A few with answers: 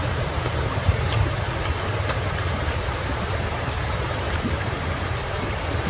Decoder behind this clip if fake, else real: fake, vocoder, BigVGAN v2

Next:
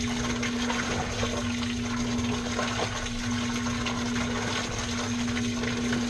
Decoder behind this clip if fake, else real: real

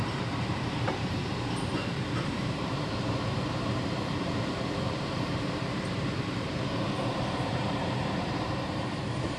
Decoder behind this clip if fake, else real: fake, vocoder, BigVGAN v2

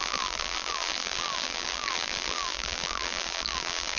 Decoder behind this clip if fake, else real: fake, vocoder, BigVGAN v2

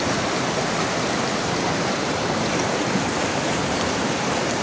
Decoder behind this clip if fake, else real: fake, vocoder, BigVGAN v2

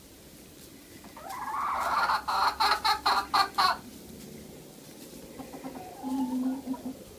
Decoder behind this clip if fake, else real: real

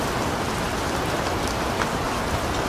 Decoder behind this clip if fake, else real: real